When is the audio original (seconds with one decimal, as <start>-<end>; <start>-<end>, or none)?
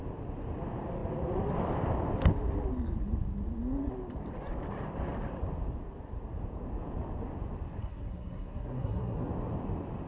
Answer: 0.0-7.8; 9.3-10.1